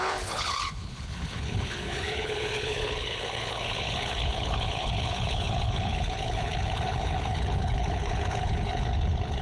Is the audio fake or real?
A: fake